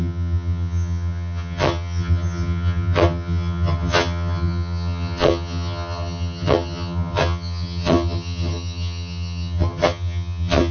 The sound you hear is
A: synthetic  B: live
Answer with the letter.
A